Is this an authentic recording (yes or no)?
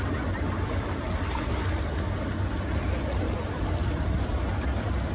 yes